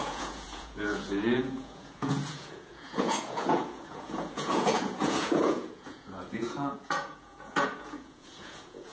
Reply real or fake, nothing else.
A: fake